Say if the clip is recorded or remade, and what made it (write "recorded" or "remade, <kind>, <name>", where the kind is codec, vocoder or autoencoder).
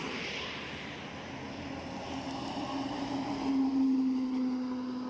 recorded